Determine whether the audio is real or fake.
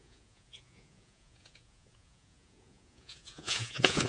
fake